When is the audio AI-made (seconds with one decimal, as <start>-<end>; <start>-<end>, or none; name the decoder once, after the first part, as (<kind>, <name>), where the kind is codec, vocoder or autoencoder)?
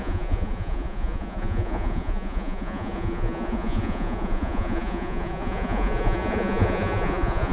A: 0.0-7.5 (vocoder, Vocos)